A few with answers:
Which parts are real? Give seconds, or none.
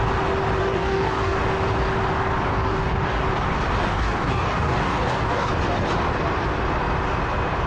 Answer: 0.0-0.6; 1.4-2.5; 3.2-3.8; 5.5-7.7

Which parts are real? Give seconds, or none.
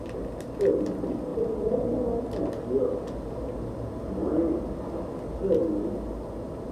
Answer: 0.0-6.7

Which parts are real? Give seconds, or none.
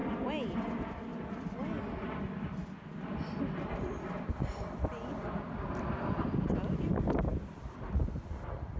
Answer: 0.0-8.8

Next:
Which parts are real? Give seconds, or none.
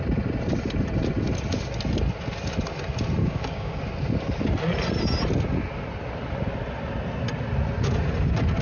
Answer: 0.0-3.2; 3.8-8.6